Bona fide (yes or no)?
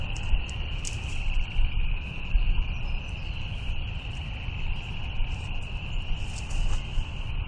yes